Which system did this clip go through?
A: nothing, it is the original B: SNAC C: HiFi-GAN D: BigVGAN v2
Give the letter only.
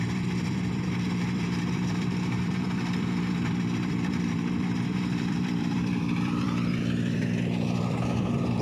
D